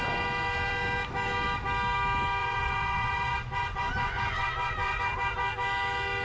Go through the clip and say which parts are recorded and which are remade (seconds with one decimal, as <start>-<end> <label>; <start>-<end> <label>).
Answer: 0.0-2.4 recorded; 2.4-5.0 remade; 5.0-6.2 recorded